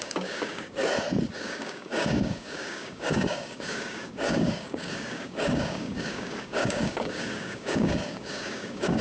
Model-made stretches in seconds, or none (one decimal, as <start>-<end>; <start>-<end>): 0.0-0.8; 1.3-9.0